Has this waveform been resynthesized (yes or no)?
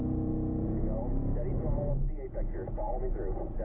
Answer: yes